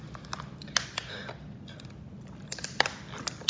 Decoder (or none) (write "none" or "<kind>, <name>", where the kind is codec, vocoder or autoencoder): none